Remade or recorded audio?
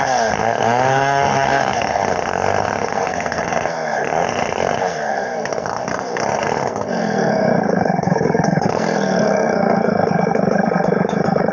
remade